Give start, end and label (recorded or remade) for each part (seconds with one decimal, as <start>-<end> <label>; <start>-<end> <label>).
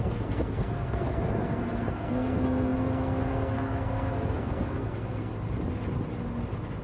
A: 0.0-5.3 remade; 5.3-6.8 recorded